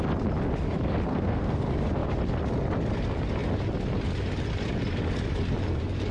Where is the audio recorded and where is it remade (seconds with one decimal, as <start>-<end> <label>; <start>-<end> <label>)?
0.0-1.1 recorded; 1.1-1.6 remade; 1.6-6.1 recorded

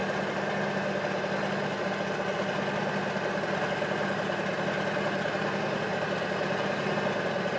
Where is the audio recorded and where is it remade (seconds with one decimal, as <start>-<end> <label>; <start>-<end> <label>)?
0.0-7.6 recorded

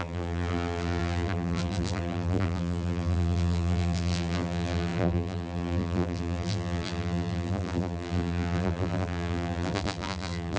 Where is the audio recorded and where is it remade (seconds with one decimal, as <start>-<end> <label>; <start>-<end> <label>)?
0.0-10.6 remade

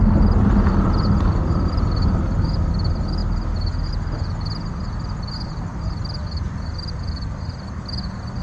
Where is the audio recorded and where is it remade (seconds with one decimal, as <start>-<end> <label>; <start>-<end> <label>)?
0.0-5.7 recorded; 5.7-8.4 remade

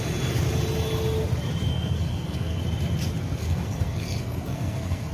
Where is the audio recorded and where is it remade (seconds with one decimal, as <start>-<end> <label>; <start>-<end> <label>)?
0.0-1.7 recorded; 1.7-2.6 remade; 2.6-3.4 recorded; 3.4-5.1 remade

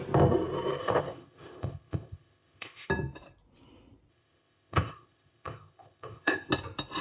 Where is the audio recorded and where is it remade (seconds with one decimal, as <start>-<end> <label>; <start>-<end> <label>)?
0.0-0.8 recorded; 0.8-2.9 remade; 2.9-4.1 recorded; 4.1-6.5 remade; 6.5-7.0 recorded